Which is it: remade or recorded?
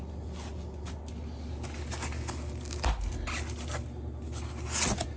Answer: recorded